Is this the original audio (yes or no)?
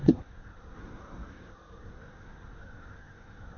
no